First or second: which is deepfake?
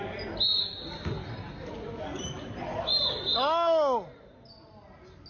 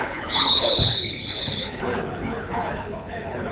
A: second